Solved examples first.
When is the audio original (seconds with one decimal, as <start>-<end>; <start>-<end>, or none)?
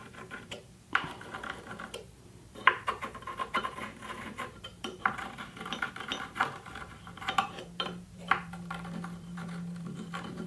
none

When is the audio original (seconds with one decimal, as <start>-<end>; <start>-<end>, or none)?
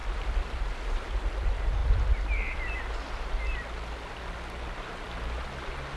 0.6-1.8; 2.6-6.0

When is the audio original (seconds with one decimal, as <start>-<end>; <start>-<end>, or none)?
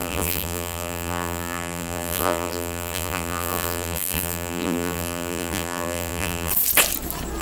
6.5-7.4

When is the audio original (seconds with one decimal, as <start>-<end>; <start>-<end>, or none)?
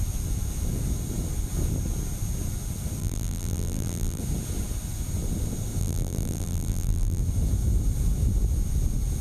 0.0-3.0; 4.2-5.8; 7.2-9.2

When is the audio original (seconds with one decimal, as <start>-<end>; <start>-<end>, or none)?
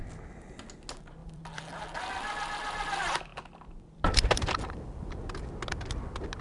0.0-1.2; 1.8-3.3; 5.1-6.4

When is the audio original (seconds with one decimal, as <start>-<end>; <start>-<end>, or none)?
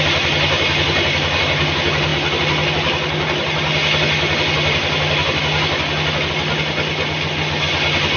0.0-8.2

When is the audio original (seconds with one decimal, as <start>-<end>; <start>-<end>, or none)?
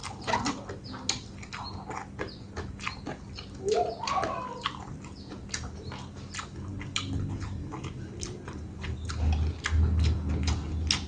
0.0-11.1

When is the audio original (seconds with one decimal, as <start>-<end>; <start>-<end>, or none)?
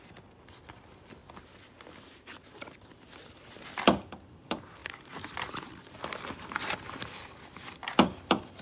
1.2-2.4; 4.8-5.7